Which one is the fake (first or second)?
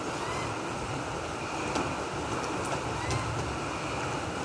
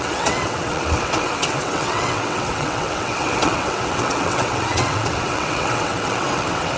second